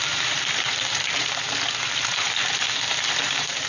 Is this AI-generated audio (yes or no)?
yes